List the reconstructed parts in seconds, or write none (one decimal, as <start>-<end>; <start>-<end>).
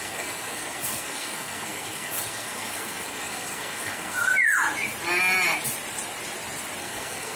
0.0-4.3; 6.8-7.4